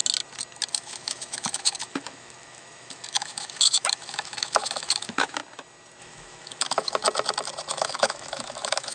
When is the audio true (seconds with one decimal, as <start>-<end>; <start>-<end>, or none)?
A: 0.0-0.7; 5.4-6.0; 7.0-7.7